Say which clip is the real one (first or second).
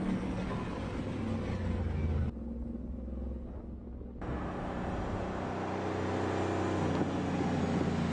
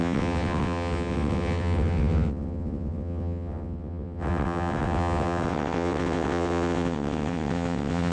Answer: first